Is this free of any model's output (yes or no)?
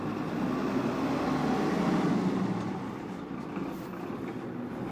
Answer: yes